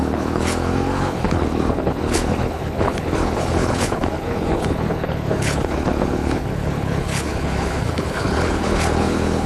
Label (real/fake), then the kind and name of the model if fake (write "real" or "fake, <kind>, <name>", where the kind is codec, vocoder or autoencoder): fake, codec, HILCodec